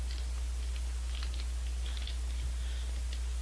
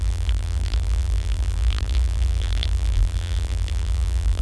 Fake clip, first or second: second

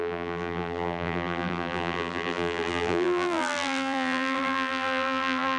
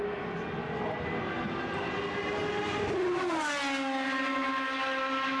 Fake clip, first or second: first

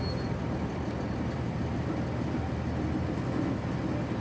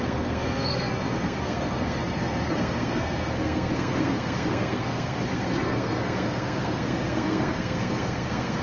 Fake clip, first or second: second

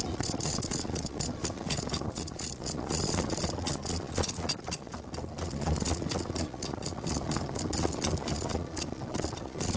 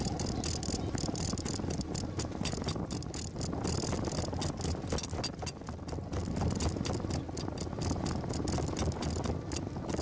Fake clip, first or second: first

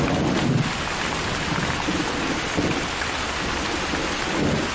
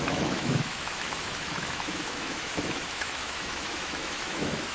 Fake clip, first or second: second